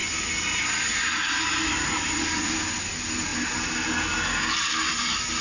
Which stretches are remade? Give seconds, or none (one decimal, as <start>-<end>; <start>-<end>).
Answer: none